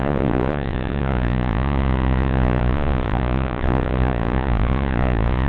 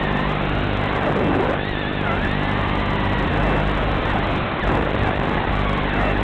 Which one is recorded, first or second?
second